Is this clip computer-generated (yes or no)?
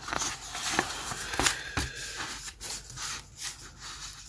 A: no